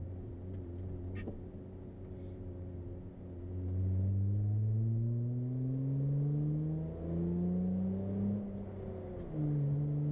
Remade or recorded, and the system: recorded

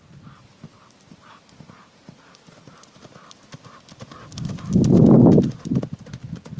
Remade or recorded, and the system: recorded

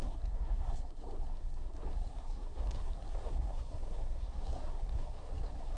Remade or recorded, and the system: remade, codec, SNAC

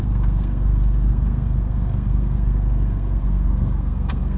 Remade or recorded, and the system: remade, codec, SNAC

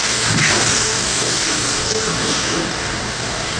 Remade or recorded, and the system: remade, codec, DAC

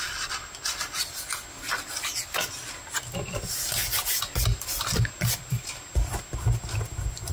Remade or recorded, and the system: recorded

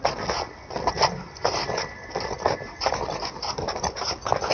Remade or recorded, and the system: recorded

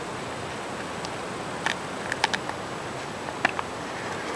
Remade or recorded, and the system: recorded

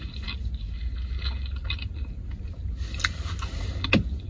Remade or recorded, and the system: recorded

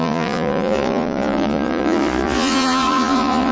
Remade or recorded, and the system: remade, vocoder, Vocos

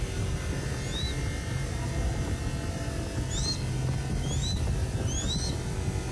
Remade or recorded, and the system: recorded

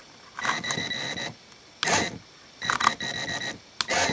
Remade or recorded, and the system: recorded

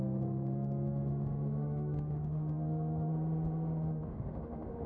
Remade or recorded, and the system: remade, autoencoder, DAC-VAE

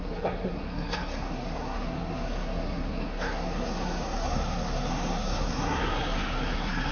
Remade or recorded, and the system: remade, codec, SNAC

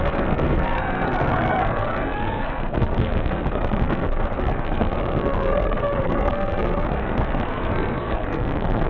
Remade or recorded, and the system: remade, codec, SNAC